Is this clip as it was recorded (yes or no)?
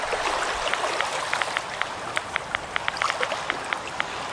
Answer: yes